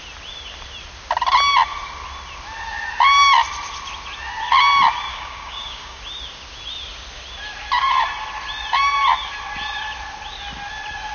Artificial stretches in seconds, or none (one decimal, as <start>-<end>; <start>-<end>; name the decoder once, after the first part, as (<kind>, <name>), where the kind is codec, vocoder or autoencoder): 5.1-6.0 (codec, DAC)